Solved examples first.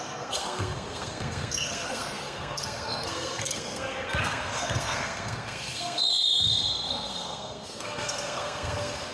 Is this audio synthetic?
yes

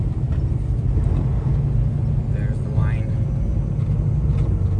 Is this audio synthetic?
no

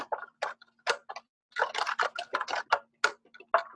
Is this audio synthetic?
no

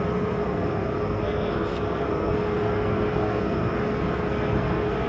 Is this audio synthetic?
yes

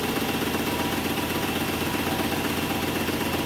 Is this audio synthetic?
no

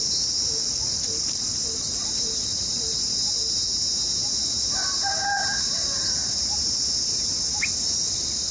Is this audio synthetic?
no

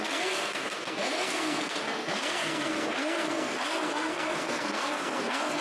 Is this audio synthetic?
yes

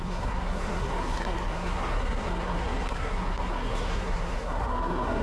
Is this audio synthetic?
yes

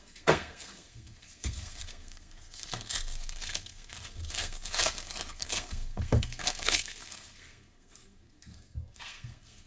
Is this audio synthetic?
yes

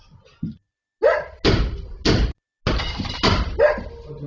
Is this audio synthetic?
no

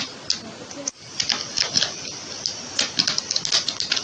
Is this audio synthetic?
no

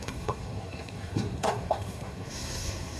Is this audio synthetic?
yes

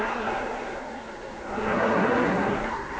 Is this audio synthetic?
yes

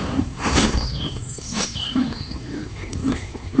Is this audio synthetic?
yes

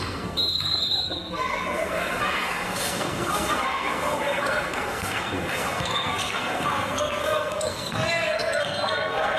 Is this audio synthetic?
yes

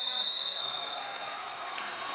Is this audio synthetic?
yes